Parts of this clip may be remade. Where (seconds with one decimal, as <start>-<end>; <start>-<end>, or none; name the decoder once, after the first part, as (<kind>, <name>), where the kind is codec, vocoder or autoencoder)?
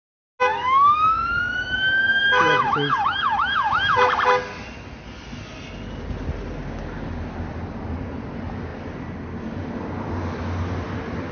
0.5-4.0 (autoencoder, DAC-VAE)